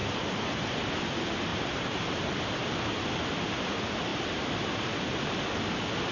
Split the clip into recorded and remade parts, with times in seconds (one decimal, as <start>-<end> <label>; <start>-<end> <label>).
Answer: 0.0-1.0 remade; 1.0-1.5 recorded; 1.5-2.1 remade; 2.1-4.1 recorded; 4.1-4.9 remade; 4.9-6.1 recorded